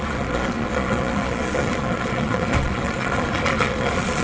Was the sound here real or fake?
fake